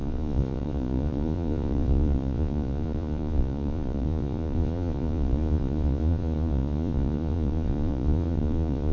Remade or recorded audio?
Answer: remade